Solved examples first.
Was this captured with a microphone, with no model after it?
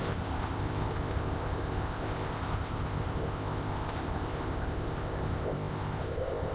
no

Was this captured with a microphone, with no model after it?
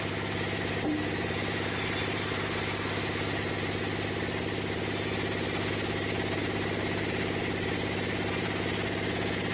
yes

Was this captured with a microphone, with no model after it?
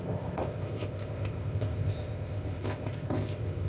no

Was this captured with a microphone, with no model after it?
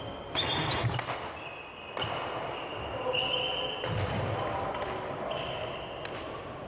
yes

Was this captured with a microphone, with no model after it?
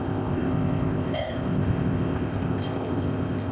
no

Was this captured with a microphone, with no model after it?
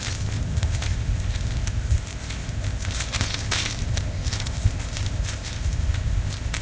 no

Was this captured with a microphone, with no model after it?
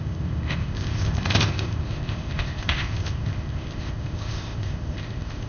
no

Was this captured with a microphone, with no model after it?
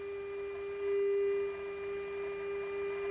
yes